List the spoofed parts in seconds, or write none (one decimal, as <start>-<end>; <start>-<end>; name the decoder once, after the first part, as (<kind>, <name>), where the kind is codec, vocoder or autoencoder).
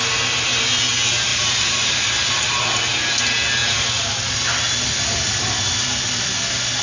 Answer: 1.3-2.9 (vocoder, BigVGAN v2)